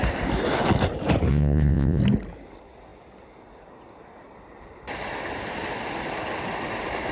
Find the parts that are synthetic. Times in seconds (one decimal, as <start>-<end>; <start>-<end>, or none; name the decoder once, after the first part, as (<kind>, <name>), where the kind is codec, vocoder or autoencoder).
1.3-2.0 (vocoder, WaveNeXt)